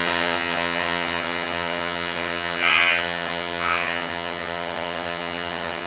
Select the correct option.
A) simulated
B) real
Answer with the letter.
A